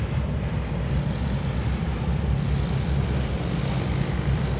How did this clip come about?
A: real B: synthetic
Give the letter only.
A